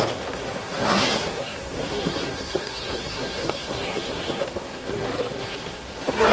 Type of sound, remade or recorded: remade